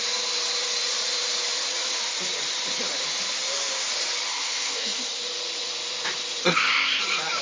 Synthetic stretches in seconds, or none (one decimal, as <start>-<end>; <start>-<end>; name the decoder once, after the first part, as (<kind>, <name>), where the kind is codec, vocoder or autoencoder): 4.3-5.2 (codec, ZipCodec); 6.4-7.0